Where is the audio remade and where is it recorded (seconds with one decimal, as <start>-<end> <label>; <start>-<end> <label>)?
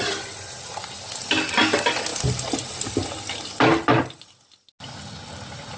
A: 0.0-5.8 recorded